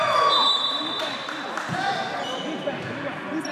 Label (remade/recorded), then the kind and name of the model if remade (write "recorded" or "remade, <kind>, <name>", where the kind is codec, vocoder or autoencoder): recorded